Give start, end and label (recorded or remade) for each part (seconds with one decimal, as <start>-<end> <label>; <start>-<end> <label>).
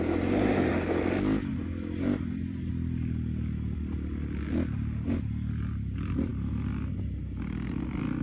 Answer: 0.0-1.5 recorded; 1.5-2.7 remade; 2.7-8.2 recorded